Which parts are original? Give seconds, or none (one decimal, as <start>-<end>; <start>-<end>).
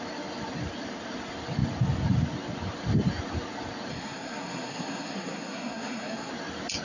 0.0-3.9; 6.3-6.8